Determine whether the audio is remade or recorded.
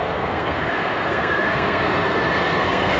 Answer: remade